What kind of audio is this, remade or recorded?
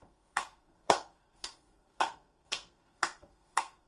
remade